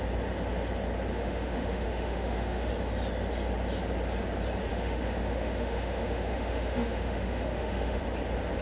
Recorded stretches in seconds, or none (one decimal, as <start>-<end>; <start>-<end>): 0.0-1.1; 2.7-4.7; 8.0-8.6